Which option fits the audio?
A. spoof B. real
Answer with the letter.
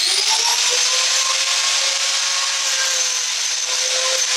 B